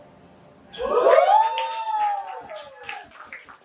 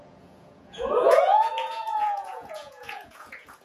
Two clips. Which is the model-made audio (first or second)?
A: second